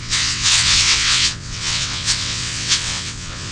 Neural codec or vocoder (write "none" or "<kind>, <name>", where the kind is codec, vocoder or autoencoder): vocoder, WaveNeXt